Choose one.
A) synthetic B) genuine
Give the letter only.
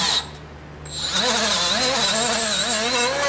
B